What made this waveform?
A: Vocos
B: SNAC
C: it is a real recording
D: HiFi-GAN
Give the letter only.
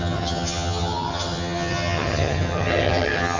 D